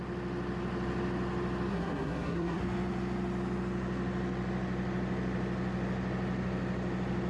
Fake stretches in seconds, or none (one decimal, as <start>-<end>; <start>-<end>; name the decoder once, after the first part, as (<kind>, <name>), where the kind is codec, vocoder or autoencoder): 1.7-2.6 (codec, SNAC)